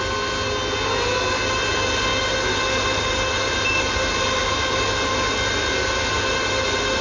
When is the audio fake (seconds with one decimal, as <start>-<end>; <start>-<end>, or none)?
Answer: none